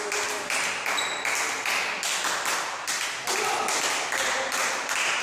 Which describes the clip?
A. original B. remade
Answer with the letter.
A